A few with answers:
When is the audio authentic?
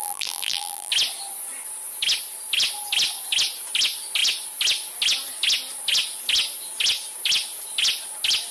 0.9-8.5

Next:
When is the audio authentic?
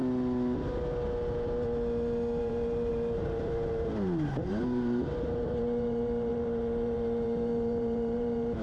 0.0-2.4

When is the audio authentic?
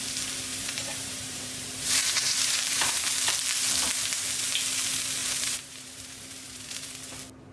0.0-0.5; 2.9-5.2; 7.1-7.5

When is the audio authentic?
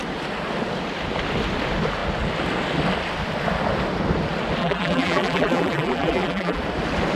0.0-4.6; 6.6-7.2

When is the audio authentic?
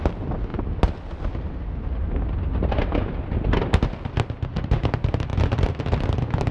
0.0-6.5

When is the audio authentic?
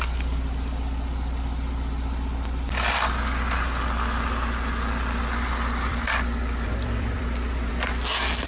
0.0-5.9; 7.7-8.5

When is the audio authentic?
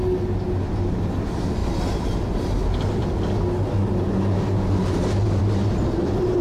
0.0-6.4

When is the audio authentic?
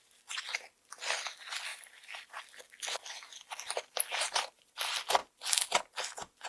0.0-1.7; 2.4-4.1; 4.8-6.5